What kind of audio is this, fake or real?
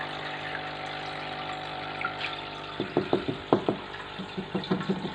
fake